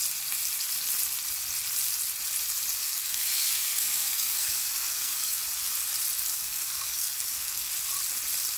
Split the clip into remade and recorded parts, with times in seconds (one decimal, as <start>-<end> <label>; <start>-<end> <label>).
0.0-2.8 recorded; 2.8-5.4 remade; 5.4-6.3 recorded; 6.3-7.7 remade; 7.7-8.6 recorded